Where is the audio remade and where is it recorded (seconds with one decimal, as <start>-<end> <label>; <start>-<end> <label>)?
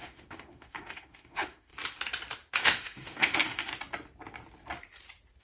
0.0-1.7 remade; 1.7-2.5 recorded; 2.5-3.7 remade; 3.7-5.4 recorded